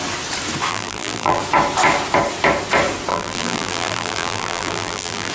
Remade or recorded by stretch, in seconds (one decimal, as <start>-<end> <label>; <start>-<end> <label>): 0.0-0.7 recorded; 0.7-1.4 remade; 1.4-3.1 recorded; 3.1-5.3 remade